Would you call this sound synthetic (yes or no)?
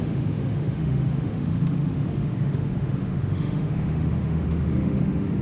yes